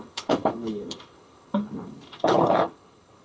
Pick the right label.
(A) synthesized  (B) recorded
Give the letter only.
A